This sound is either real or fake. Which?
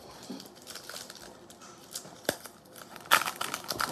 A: fake